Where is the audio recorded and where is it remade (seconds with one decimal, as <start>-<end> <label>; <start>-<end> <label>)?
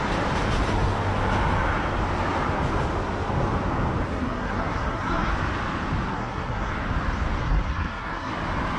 0.0-4.1 recorded; 4.1-5.3 remade; 5.3-6.1 recorded; 6.1-6.7 remade; 6.7-7.4 recorded; 7.4-8.3 remade; 8.3-8.8 recorded